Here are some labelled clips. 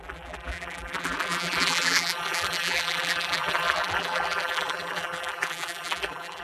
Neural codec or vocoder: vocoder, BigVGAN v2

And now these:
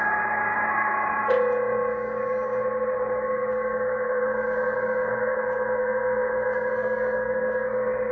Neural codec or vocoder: codec, DAC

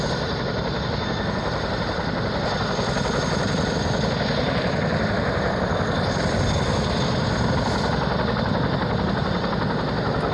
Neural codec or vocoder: none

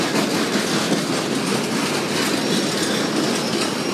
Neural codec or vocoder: none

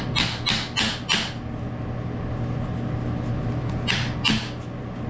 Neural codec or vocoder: none